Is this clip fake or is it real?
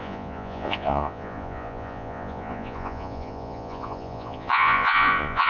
fake